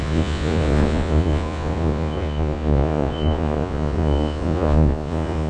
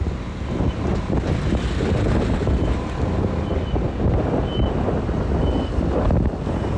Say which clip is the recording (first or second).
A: second